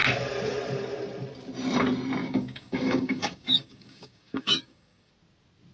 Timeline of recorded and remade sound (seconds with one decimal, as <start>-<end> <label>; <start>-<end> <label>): 0.0-2.2 recorded; 2.2-5.1 remade; 5.1-5.7 recorded